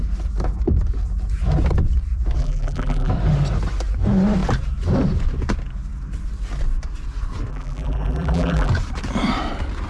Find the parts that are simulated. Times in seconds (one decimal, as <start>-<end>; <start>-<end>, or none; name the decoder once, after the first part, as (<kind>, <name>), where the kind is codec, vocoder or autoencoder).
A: 2.4-3.1 (vocoder, BigVGAN v2); 7.5-8.7